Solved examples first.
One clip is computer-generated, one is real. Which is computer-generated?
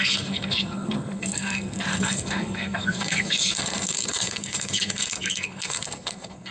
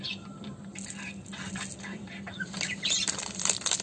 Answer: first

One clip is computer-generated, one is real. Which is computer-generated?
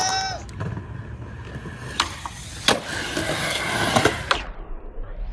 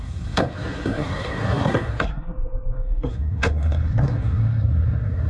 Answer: second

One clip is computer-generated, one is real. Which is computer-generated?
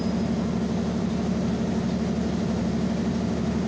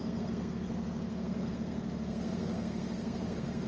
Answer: second